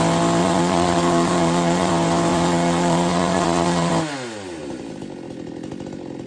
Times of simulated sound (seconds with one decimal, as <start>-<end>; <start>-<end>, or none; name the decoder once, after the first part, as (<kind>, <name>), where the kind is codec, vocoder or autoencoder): 0.4-1.9 (vocoder, Vocos); 2.3-3.9